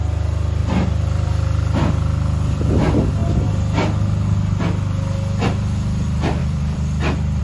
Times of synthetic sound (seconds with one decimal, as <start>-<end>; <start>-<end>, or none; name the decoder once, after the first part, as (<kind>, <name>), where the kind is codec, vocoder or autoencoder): 0.6-1.6 (vocoder, BigVGAN v2); 6.4-7.4